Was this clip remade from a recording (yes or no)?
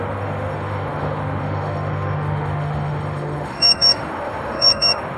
yes